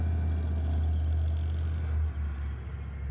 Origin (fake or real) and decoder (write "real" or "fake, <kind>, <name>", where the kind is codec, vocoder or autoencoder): real